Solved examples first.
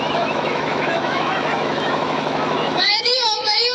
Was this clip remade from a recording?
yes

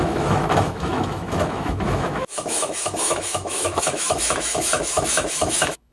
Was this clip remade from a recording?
yes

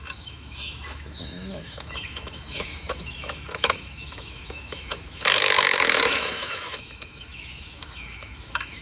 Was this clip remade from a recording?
yes